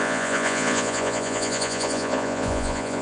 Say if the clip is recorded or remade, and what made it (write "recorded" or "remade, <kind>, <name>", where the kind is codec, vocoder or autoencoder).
remade, vocoder, Vocos